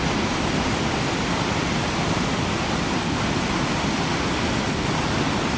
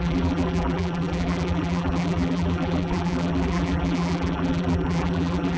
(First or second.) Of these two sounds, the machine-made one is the second